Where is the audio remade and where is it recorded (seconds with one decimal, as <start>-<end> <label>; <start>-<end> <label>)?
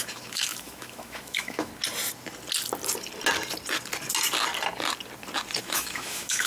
0.0-1.7 remade; 1.7-5.6 recorded; 5.6-6.5 remade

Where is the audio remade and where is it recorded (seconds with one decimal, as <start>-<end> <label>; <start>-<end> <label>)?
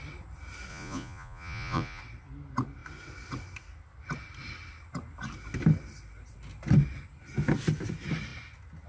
0.0-0.7 recorded; 0.7-2.0 remade; 2.0-8.9 recorded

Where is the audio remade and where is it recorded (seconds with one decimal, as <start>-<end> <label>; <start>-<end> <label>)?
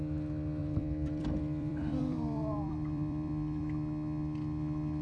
0.0-0.6 recorded; 0.6-3.6 remade; 3.6-5.0 recorded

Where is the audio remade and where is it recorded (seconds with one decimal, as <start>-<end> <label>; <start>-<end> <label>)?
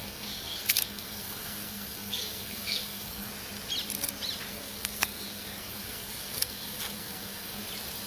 0.0-3.3 remade; 3.3-4.5 recorded; 4.5-7.6 remade; 7.6-8.1 recorded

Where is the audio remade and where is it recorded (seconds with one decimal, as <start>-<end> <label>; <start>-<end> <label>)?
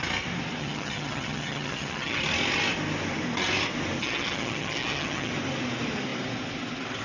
0.0-0.6 recorded; 0.6-2.2 remade; 2.2-4.0 recorded; 4.0-5.3 remade; 5.3-7.0 recorded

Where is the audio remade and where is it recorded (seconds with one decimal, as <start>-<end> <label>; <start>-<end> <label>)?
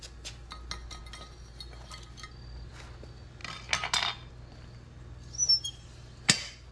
0.0-6.7 recorded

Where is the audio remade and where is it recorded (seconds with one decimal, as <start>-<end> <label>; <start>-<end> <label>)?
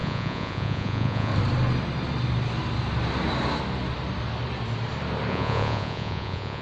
0.0-1.3 remade; 1.3-5.3 recorded; 5.3-6.6 remade